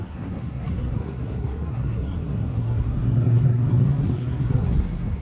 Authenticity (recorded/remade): remade